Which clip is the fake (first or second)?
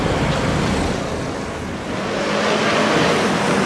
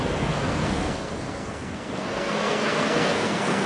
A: second